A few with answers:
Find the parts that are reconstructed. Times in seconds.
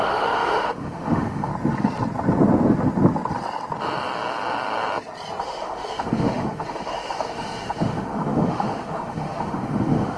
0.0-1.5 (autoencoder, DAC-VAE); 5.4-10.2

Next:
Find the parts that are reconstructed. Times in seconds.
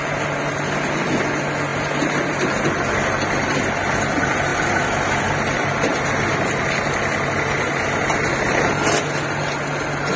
none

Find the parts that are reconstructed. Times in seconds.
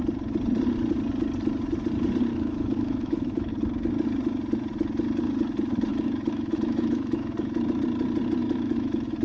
2.3-3.5 (autoencoder, DAC-VAE); 5.9-7.8; 8.4-9.2